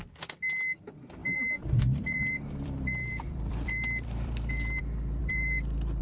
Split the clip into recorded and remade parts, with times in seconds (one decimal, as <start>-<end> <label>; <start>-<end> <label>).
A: 0.0-1.2 recorded; 1.2-4.8 remade; 4.8-5.2 recorded; 5.2-6.0 remade